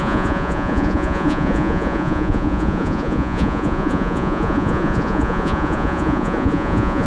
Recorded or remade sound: remade